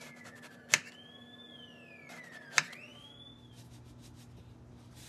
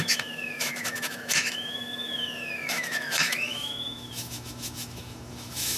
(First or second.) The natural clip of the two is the first